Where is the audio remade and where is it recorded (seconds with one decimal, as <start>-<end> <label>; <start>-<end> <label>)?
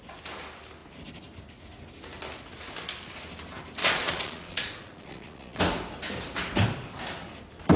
0.0-3.8 recorded; 3.8-5.6 remade; 5.6-7.8 recorded